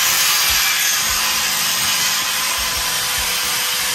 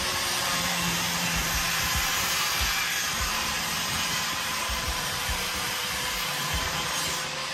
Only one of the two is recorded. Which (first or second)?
first